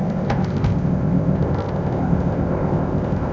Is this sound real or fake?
fake